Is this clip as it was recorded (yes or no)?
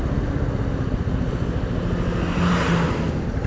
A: yes